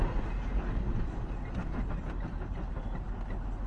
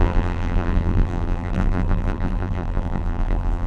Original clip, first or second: first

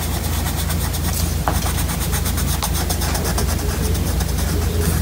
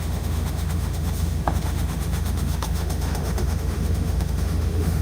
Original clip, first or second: first